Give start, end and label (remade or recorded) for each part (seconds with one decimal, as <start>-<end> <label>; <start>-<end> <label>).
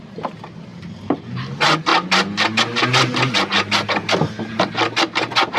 0.0-5.6 recorded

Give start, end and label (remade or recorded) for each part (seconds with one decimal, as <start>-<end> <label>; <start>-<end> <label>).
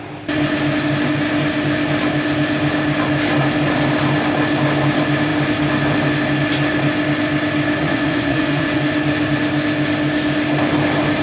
0.0-7.8 recorded; 7.8-8.8 remade; 8.8-11.2 recorded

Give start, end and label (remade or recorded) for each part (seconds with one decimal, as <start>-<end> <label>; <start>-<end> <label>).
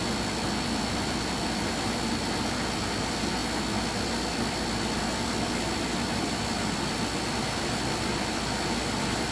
0.0-9.3 recorded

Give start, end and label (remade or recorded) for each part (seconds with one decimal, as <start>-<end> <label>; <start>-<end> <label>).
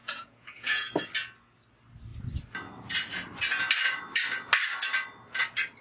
0.0-0.9 remade; 0.9-5.8 recorded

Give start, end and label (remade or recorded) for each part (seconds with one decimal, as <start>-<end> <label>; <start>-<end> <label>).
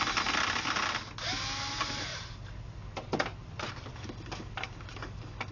0.0-3.9 recorded; 3.9-5.5 remade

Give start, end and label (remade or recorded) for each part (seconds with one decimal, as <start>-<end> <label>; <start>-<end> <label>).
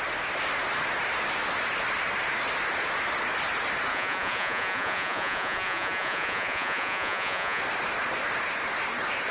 0.0-3.9 recorded; 3.9-7.6 remade; 7.6-9.3 recorded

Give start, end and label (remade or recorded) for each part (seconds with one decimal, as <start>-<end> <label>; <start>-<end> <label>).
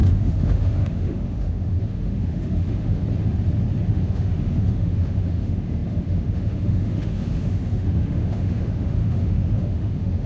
0.0-3.0 remade; 3.0-3.9 recorded; 3.9-10.3 remade